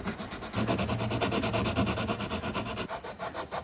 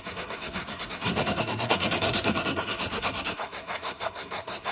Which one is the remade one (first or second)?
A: second